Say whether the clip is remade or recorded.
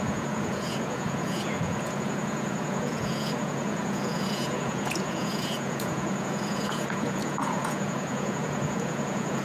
remade